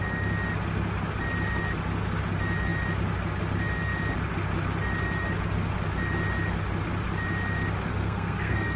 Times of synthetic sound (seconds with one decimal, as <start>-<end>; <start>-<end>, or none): 7.9-8.8